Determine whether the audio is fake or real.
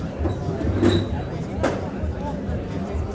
real